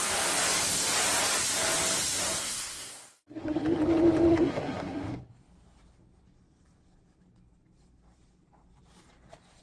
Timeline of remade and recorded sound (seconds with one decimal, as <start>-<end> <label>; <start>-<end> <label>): 0.0-2.4 recorded; 2.4-3.8 remade; 3.8-4.3 recorded; 4.3-5.4 remade; 5.4-9.6 recorded